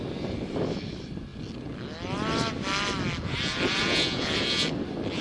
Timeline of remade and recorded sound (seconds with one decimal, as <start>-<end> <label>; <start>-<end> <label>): 0.0-5.2 recorded